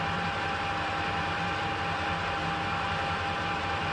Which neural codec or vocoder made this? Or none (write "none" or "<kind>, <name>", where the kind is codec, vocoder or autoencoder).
vocoder, BigVGAN v2